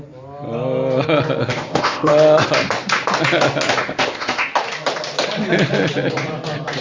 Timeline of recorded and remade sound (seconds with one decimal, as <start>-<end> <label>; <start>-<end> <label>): 0.0-1.4 recorded; 1.4-2.1 remade; 2.1-3.9 recorded; 3.9-4.5 remade; 4.5-6.8 recorded